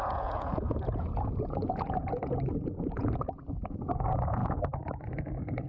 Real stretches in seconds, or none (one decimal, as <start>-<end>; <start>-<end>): none